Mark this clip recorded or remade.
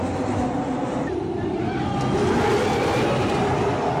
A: recorded